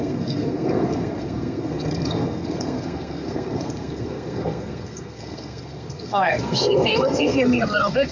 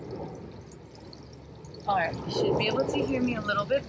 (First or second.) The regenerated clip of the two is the first